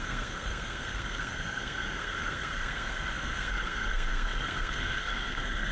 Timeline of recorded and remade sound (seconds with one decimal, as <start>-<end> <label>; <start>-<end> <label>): 0.0-5.7 remade